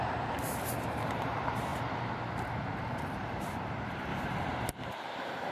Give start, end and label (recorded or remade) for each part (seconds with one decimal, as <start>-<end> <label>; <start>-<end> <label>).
0.0-1.7 remade; 1.7-2.7 recorded; 2.7-4.1 remade; 4.1-4.7 recorded; 4.7-5.5 remade